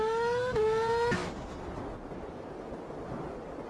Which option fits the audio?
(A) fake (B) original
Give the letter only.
B